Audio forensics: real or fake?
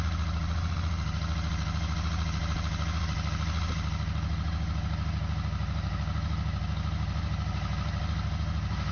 real